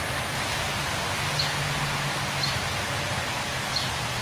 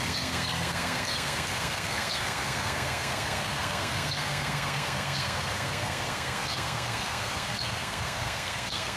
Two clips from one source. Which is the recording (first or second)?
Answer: first